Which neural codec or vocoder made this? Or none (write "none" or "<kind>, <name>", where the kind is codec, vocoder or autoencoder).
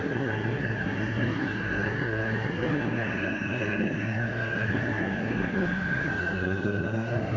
codec, SNAC